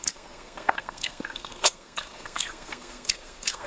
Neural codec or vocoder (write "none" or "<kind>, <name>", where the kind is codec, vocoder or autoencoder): codec, SNAC